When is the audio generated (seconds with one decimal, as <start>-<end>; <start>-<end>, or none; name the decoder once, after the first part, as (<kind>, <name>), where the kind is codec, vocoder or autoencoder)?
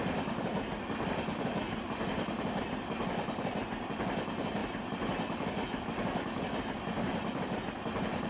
none